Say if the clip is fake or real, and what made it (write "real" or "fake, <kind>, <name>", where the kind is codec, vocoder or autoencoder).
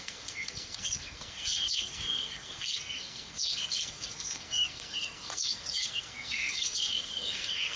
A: fake, codec, SNAC